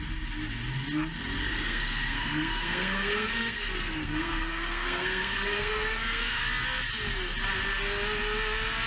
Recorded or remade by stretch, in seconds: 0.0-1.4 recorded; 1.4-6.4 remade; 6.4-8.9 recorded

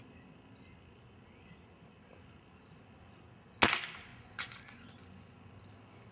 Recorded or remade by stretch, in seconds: 0.0-4.1 recorded; 4.1-5.5 remade; 5.5-6.1 recorded

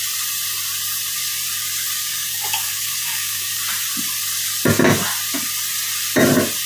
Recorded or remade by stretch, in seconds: 0.0-2.0 recorded; 2.0-3.6 remade; 3.6-6.7 recorded

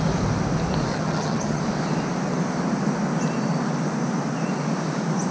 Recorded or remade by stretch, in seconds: 0.0-0.9 recorded; 0.9-1.6 remade; 1.6-5.3 recorded

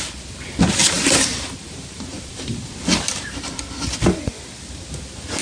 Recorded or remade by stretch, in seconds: 0.0-0.8 recorded; 0.8-3.6 remade; 3.6-5.4 recorded

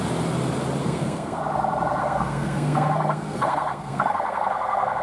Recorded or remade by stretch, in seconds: 0.0-0.8 recorded; 0.8-1.4 remade; 1.4-2.0 recorded; 2.0-5.0 remade

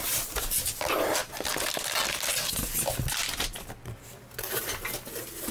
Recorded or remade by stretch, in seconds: 0.0-5.5 recorded